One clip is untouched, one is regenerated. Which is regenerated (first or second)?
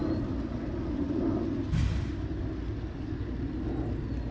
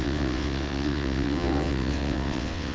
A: second